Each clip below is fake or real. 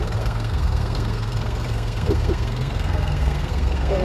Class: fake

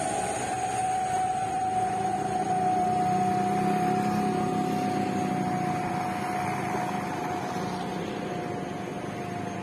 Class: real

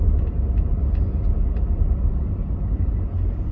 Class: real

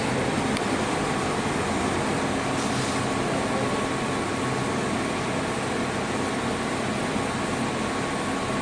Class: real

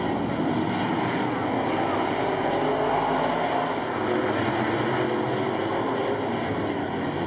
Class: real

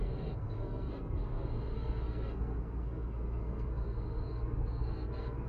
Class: fake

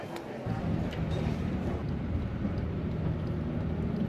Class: real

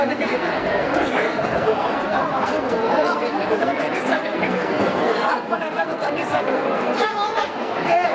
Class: fake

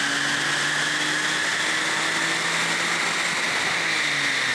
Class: real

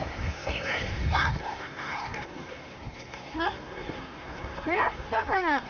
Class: fake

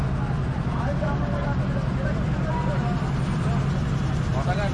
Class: real